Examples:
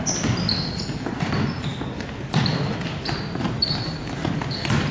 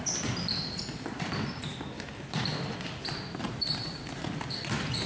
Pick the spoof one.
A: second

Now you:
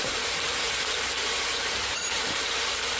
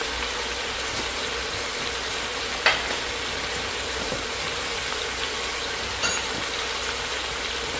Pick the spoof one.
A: first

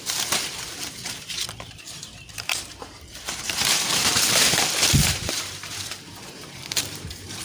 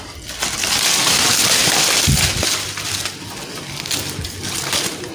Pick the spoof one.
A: first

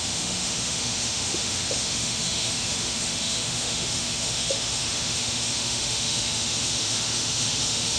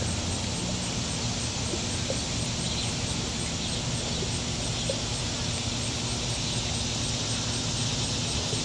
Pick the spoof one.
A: first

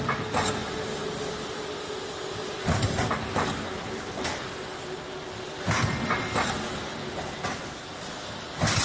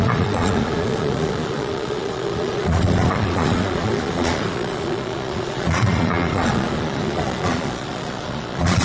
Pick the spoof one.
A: second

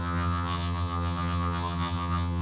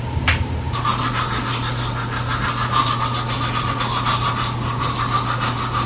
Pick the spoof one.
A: first